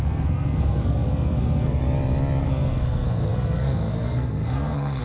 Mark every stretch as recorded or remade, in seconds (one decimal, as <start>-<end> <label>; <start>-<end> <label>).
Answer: 0.0-1.8 remade; 1.8-2.4 recorded; 2.4-5.0 remade

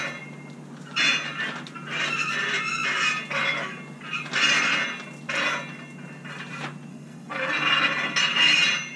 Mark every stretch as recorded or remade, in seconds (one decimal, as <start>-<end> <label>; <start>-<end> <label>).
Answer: 0.0-6.9 recorded; 6.9-7.5 remade; 7.5-9.0 recorded

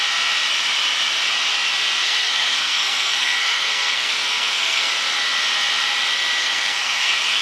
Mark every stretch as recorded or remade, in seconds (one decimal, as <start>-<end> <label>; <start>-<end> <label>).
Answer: 0.0-2.0 recorded; 2.0-4.9 remade; 4.9-6.4 recorded; 6.4-7.4 remade

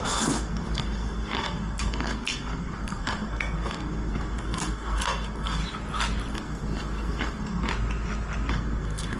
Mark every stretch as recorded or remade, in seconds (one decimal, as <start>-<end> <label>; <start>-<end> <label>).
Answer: 0.0-5.6 remade; 5.6-6.3 recorded; 6.3-7.7 remade; 7.7-8.5 recorded; 8.5-9.2 remade

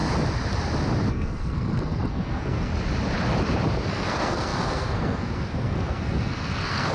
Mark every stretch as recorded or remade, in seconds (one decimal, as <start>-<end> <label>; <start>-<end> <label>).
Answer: 0.0-1.1 recorded; 1.1-2.7 remade; 2.7-3.9 recorded; 3.9-6.9 remade

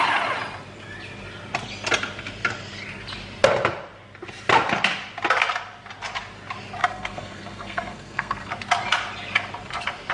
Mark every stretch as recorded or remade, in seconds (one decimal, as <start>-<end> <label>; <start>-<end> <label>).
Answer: 0.0-6.8 recorded; 6.8-8.5 remade; 8.5-10.1 recorded